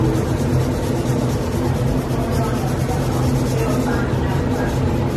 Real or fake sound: real